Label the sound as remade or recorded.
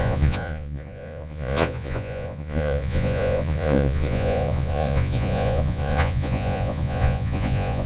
remade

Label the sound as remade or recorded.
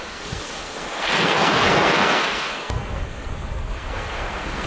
remade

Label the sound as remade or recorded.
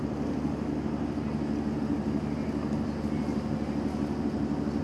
recorded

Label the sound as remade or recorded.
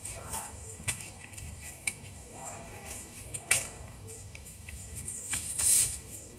remade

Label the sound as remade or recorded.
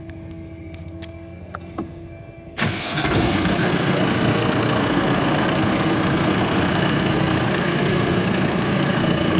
remade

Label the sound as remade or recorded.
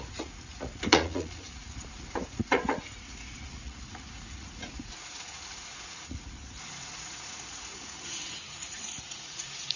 remade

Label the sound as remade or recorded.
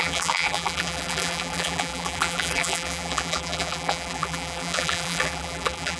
remade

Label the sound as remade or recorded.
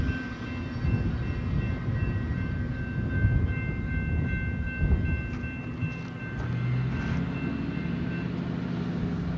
recorded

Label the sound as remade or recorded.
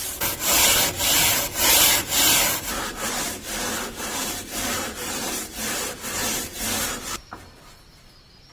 remade